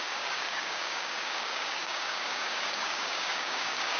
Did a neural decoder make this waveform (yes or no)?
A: yes